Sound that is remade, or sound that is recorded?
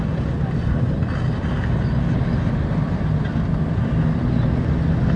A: recorded